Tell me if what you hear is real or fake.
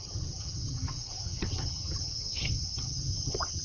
fake